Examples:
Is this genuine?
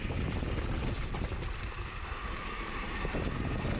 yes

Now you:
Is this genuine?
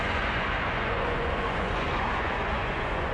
no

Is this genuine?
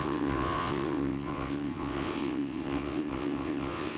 no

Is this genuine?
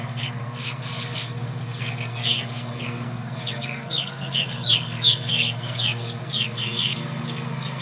no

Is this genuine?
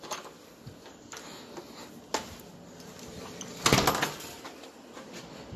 yes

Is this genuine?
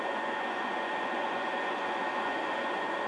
no